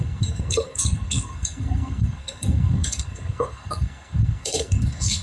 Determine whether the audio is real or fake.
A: fake